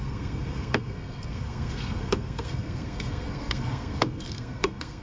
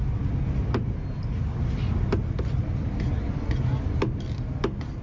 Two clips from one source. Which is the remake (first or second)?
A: first